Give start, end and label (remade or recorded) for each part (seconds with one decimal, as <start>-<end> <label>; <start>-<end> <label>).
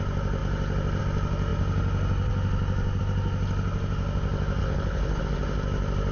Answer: 0.0-4.6 recorded; 4.6-5.2 remade; 5.2-6.1 recorded